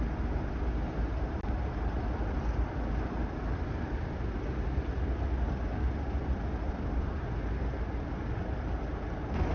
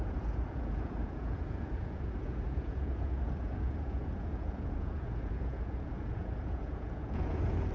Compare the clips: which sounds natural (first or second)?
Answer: first